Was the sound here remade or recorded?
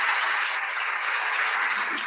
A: remade